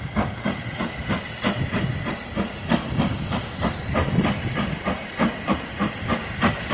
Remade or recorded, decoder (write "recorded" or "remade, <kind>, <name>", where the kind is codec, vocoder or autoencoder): recorded